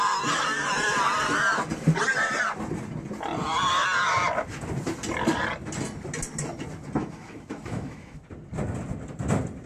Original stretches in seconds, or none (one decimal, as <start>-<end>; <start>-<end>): 0.0-7.0; 8.2-9.7